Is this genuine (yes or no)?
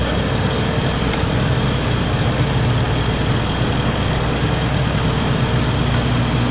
yes